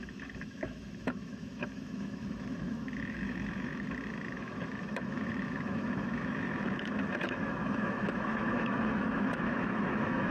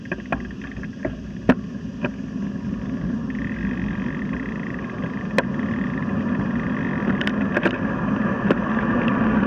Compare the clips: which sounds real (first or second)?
second